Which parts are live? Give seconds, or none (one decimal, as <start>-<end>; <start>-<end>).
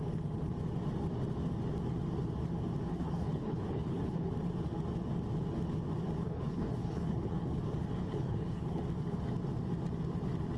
0.0-2.9; 4.3-6.2; 7.6-8.0; 8.8-10.6